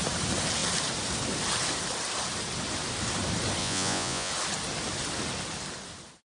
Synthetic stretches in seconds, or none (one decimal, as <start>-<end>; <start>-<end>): 3.6-4.3